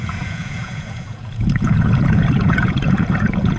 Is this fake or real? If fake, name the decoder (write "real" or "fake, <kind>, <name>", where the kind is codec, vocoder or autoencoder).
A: fake, vocoder, Vocos